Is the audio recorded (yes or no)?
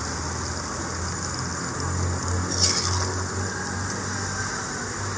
yes